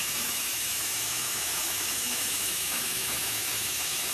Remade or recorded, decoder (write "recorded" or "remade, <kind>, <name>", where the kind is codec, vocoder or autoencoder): remade, autoencoder, DAC-VAE